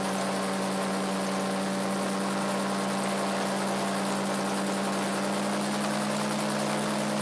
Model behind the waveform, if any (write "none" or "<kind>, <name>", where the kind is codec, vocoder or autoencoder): none